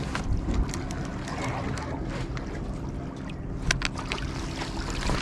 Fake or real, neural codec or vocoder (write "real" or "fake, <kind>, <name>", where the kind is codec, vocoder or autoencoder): real